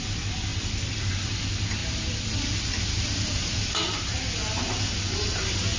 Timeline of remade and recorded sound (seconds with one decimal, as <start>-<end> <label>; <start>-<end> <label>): 0.0-0.5 recorded; 0.5-1.1 remade; 1.1-5.8 recorded